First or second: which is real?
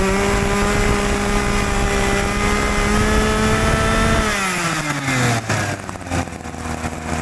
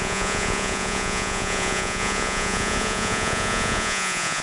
first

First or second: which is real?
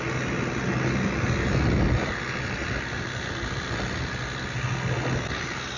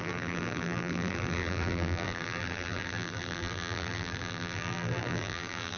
first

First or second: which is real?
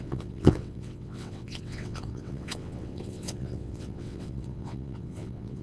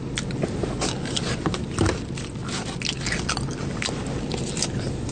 second